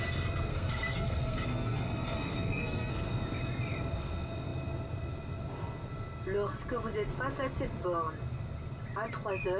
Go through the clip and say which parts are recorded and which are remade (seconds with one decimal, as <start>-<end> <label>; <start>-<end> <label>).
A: 0.0-0.5 recorded; 0.5-2.9 remade; 2.9-9.6 recorded